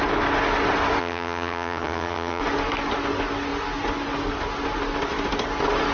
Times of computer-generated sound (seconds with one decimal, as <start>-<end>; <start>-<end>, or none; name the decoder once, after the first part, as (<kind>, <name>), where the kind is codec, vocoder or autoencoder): 1.0-2.4 (vocoder, HiFi-GAN)